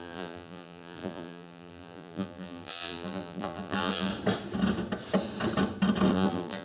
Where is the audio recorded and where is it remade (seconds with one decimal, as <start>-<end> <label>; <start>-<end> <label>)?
0.0-4.1 remade; 4.1-6.1 recorded; 6.1-6.6 remade